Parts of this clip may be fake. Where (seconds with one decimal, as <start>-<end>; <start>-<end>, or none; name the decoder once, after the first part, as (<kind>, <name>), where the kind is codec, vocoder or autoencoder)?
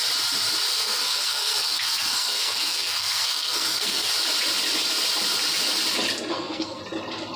0.7-4.1 (codec, SNAC); 6.3-6.8